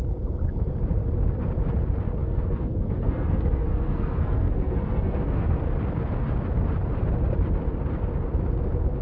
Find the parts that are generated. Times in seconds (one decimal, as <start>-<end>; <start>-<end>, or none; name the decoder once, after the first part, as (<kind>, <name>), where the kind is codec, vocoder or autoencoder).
2.2-5.6 (codec, SNAC)